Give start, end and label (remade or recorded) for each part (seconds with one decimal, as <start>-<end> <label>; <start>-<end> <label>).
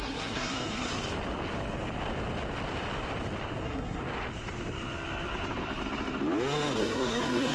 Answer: 0.0-0.9 remade; 0.9-3.6 recorded; 3.6-4.0 remade; 4.0-6.8 recorded; 6.8-7.5 remade